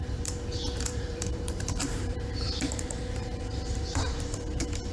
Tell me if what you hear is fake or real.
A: fake